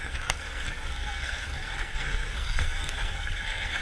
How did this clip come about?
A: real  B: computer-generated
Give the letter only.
B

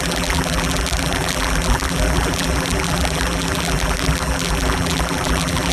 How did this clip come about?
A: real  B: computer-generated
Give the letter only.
B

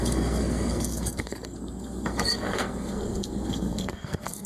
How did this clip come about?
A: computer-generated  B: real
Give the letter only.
A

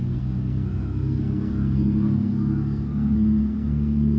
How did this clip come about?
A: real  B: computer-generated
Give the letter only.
B